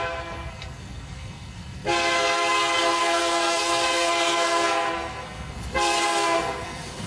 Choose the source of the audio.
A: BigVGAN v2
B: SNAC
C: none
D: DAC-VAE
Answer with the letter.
B